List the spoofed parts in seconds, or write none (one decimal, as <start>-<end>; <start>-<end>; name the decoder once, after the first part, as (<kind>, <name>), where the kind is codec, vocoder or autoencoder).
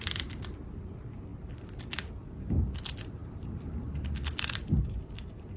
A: 0.0-5.6 (vocoder, BigVGAN v2)